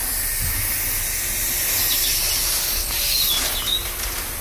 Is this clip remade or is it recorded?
recorded